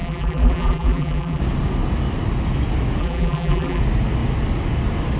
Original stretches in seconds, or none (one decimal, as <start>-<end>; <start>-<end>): 1.4-3.0; 3.8-5.2